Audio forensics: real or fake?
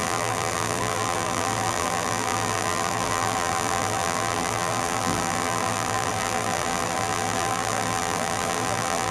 fake